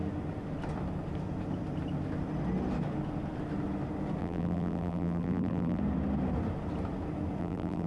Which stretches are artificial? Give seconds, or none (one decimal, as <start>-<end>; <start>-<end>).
4.2-5.8; 7.4-7.9